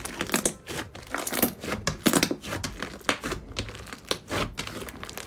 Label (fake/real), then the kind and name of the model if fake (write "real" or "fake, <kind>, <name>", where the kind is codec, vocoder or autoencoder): real